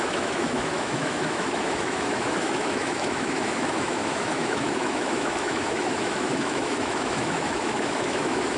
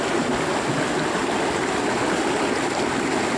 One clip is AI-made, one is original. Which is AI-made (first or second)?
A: first